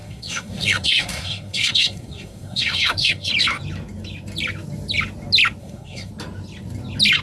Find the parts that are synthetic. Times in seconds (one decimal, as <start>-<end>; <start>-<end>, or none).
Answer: 0.0-3.3; 5.6-6.1